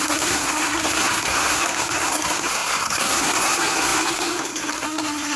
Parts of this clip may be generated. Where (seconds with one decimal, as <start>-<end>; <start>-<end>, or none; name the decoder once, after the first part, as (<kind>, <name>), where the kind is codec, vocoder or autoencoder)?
0.0-5.4 (codec, SNAC)